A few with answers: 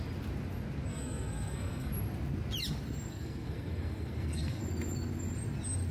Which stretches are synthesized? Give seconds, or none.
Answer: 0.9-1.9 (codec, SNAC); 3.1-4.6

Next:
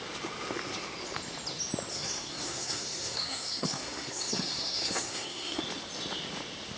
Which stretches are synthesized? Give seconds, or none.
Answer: 1.9-5.6 (codec, SNAC)

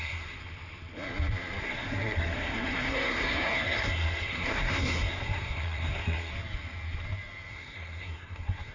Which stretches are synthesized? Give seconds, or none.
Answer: 0.0-0.4 (codec, SNAC); 1.6-6.3; 7.5-8.7